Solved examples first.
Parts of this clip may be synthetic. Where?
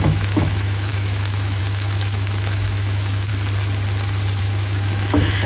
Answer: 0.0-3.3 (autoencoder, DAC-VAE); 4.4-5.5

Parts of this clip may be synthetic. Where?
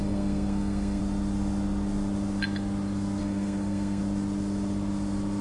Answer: 0.0-1.0 (codec, SNAC); 3.2-4.0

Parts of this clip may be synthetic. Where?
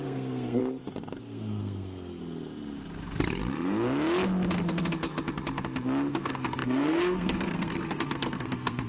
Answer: 0.0-0.6 (codec, SNAC); 1.2-2.2; 6.1-8.9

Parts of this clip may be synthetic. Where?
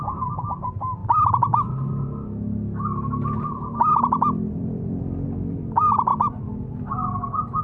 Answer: 0.0-1.0 (vocoder, BigVGAN v2); 3.4-6.1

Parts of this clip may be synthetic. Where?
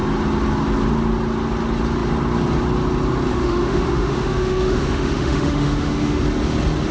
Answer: 3.3-6.2 (autoencoder, DAC-VAE)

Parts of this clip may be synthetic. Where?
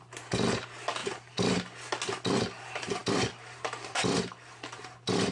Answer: 3.0-5.3 (vocoder, BigVGAN v2)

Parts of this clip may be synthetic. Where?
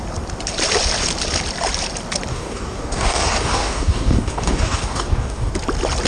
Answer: 2.3-5.5 (codec, DAC)